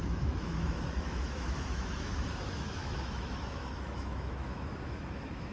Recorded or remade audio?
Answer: remade